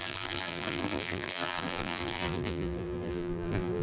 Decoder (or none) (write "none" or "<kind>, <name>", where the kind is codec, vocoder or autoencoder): vocoder, BigVGAN v2